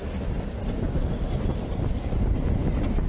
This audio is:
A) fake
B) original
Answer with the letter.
B